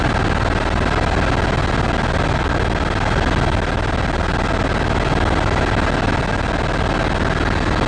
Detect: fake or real real